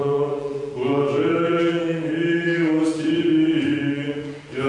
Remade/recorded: remade